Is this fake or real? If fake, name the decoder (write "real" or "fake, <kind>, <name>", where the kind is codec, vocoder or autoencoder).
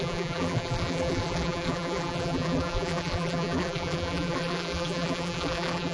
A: fake, vocoder, BigVGAN v2